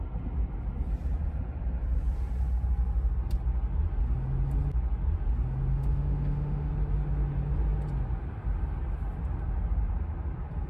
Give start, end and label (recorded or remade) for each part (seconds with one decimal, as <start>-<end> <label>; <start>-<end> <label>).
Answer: 0.0-5.7 recorded; 5.7-6.7 remade; 6.7-10.7 recorded

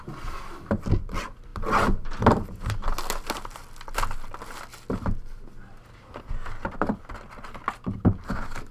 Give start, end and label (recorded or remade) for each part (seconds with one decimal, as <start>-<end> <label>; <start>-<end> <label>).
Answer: 0.0-8.7 recorded

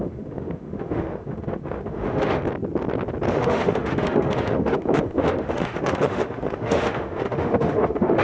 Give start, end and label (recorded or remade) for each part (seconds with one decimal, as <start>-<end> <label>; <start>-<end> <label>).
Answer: 0.0-2.4 remade; 2.4-3.3 recorded; 3.3-8.2 remade

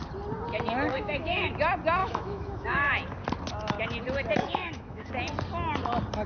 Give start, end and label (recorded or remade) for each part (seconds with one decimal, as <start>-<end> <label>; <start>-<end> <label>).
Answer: 0.0-0.9 recorded; 0.9-1.5 remade; 1.5-2.0 recorded; 2.0-2.9 remade; 2.9-4.4 recorded; 4.4-5.1 remade; 5.1-6.3 recorded

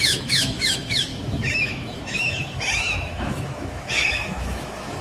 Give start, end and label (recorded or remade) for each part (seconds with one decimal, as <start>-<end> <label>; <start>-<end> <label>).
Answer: 0.0-5.0 remade

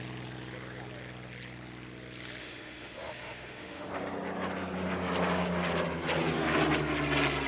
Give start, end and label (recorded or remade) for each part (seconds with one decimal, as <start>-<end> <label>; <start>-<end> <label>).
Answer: 0.0-2.4 recorded; 2.4-3.9 remade; 3.9-7.5 recorded

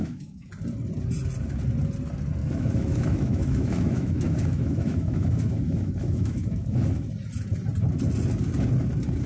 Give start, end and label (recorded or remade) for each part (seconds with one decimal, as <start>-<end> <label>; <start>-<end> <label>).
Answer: 0.0-0.5 remade; 0.5-2.4 recorded; 2.4-7.1 remade; 7.1-9.3 recorded

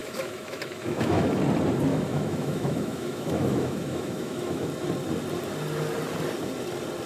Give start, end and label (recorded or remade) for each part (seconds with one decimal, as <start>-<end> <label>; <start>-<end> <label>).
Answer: 0.0-1.4 remade; 1.4-1.9 recorded; 1.9-4.7 remade; 4.7-7.1 recorded